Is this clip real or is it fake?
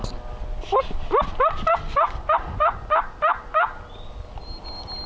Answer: real